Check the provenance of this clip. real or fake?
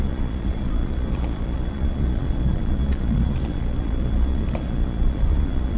fake